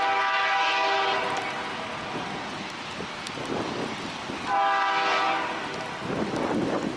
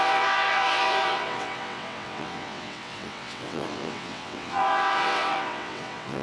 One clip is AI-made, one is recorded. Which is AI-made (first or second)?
second